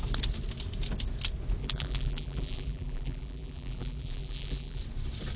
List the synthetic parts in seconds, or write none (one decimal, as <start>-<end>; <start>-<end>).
1.6-4.8